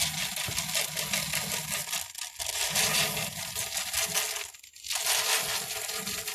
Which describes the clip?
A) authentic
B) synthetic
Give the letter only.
A